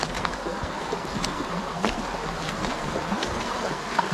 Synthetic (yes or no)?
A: yes